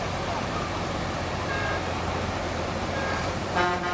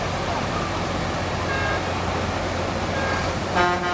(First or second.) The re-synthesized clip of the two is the first